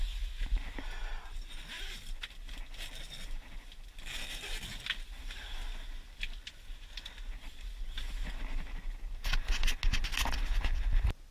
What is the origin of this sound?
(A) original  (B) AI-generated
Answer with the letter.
A